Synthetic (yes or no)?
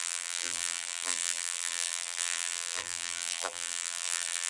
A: yes